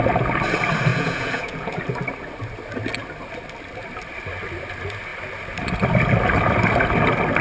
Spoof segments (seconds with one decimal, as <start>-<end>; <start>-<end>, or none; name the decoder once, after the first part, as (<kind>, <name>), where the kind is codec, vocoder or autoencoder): 0.9-1.8 (vocoder, Vocos)